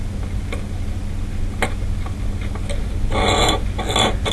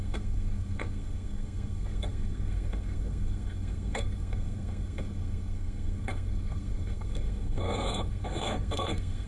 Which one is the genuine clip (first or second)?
first